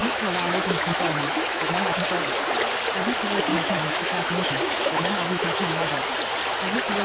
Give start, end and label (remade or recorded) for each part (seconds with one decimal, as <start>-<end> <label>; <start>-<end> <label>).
0.0-2.0 remade; 2.0-3.5 recorded; 3.5-5.9 remade; 5.9-7.0 recorded